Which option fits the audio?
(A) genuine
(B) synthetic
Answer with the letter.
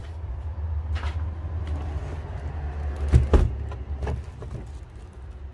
A